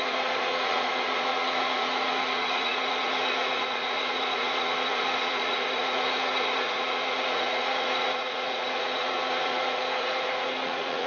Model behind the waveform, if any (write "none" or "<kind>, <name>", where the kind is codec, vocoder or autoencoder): vocoder, Vocos